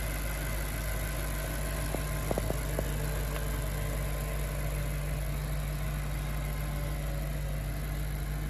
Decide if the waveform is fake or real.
real